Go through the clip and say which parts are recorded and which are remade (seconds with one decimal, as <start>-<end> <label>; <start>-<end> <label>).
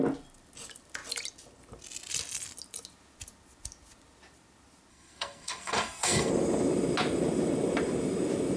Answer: 0.0-4.9 recorded; 4.9-6.3 remade; 6.3-8.6 recorded